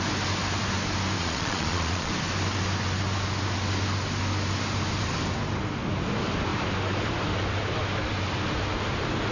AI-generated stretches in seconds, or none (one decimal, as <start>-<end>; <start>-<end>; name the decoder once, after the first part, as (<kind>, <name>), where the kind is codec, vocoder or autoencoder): 1.2-2.1 (vocoder, Vocos)